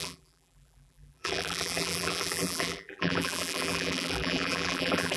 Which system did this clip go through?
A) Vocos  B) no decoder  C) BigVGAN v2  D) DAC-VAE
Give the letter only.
C